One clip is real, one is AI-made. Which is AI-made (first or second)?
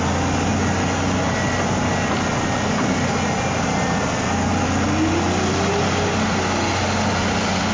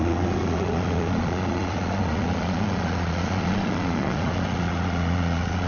second